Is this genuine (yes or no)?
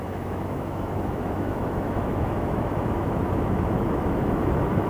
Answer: no